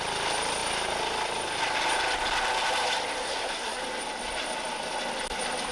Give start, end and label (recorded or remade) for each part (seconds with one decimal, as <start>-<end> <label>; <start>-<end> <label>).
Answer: 0.0-3.2 recorded; 3.2-3.8 remade; 3.8-5.7 recorded